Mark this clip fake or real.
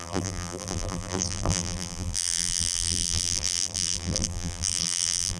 fake